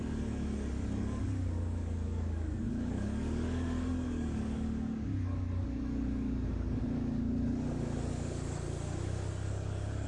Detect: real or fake fake